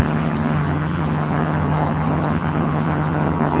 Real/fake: fake